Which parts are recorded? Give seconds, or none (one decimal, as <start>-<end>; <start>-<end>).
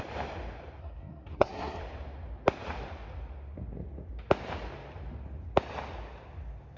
0.0-0.8; 1.8-6.8